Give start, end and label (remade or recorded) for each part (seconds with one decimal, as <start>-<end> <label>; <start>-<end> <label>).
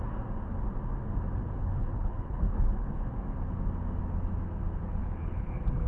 0.0-1.4 recorded; 1.4-3.0 remade; 3.0-5.0 recorded; 5.0-5.9 remade